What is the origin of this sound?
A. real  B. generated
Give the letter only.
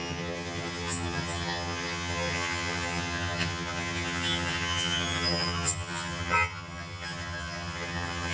B